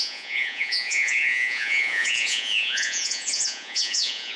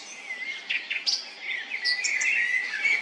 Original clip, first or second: second